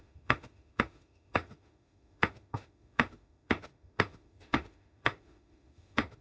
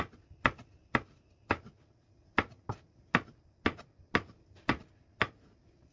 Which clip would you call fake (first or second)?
first